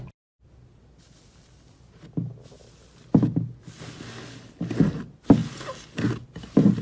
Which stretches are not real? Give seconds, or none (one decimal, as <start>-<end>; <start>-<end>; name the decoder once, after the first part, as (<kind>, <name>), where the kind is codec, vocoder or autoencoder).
none